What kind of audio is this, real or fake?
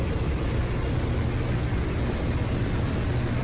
real